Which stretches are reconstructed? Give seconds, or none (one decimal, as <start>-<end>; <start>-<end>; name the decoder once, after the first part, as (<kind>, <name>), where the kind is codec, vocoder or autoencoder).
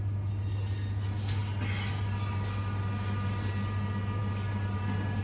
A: none